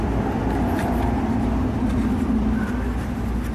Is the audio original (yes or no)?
yes